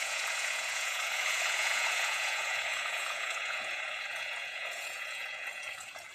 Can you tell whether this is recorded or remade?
remade